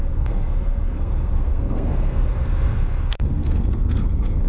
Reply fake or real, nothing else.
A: fake